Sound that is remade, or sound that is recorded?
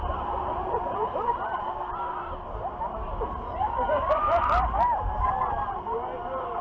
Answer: remade